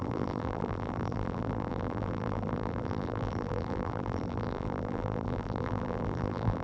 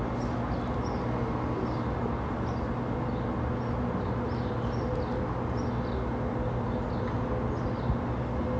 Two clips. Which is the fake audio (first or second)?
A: first